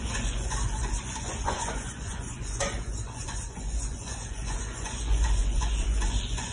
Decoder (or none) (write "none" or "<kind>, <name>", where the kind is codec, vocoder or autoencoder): vocoder, Vocos